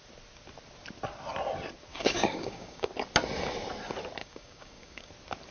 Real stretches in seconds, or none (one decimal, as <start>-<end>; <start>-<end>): 0.0-1.9; 2.9-4.2; 5.1-5.5